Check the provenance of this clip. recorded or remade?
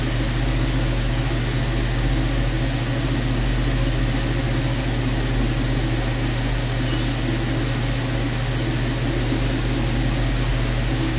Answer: recorded